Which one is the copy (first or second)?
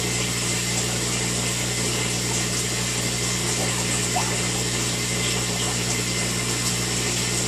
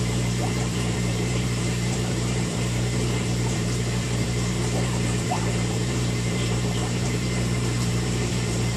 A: second